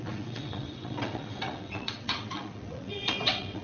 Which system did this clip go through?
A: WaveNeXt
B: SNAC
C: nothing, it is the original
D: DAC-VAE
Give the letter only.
A